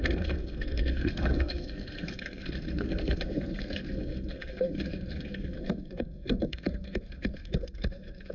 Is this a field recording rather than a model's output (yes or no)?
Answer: no